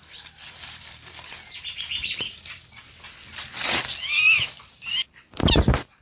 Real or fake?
fake